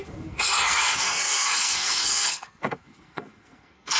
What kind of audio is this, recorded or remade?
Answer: remade